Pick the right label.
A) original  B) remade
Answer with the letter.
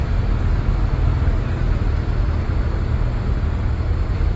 A